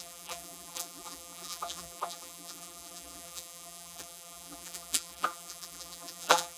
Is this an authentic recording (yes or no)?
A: no